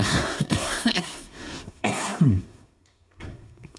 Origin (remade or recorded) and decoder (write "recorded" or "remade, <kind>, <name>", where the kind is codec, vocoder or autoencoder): remade, codec, SNAC